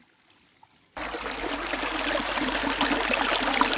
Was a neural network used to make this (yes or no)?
no